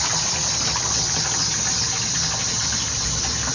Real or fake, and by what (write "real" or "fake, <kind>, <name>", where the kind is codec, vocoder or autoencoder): real